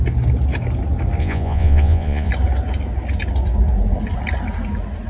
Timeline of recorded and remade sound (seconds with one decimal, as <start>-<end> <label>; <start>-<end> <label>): 0.0-1.2 recorded; 1.2-2.3 remade; 2.3-5.1 recorded